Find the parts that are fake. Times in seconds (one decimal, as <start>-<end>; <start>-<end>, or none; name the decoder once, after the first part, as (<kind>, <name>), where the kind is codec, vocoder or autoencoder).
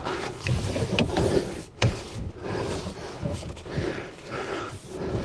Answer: 0.0-0.5 (codec, HILCodec); 1.5-2.3; 3.1-4.7